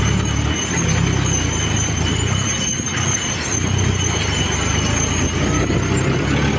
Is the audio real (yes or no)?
yes